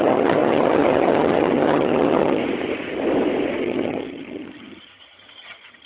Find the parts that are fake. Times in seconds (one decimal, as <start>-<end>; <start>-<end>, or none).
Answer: 0.0-2.4; 3.6-5.9

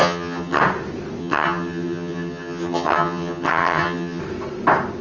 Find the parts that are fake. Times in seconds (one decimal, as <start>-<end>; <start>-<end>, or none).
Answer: 0.0-0.6; 1.2-4.2